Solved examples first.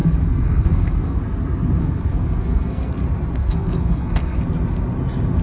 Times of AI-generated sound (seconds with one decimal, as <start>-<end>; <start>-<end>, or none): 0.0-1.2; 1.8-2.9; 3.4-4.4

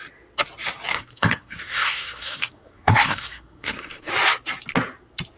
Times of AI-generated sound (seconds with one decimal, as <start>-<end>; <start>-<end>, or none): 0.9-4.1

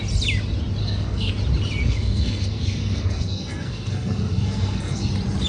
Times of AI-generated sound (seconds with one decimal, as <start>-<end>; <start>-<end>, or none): 0.8-1.3; 1.8-5.1